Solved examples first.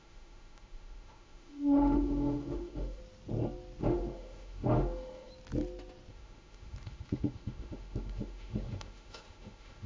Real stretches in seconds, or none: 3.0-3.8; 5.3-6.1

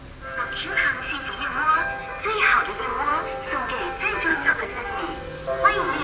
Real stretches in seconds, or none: 0.0-4.3; 5.0-6.0

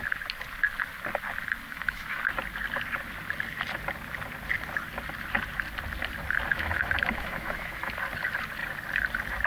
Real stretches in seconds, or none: 0.0-1.7; 2.2-6.5; 7.8-9.5

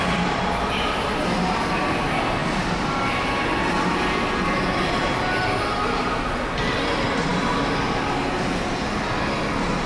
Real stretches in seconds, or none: 0.0-9.9

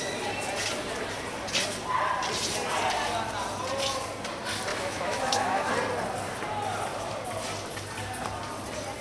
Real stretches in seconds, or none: 0.0-4.7; 5.7-9.0

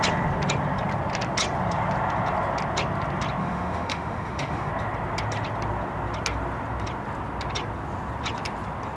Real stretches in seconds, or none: 0.0-3.4; 4.7-9.0